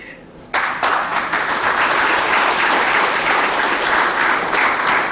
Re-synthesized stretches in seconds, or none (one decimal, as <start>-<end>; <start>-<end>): none